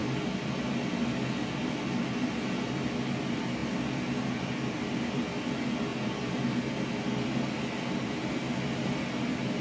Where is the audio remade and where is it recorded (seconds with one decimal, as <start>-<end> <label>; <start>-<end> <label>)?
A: 0.0-9.6 recorded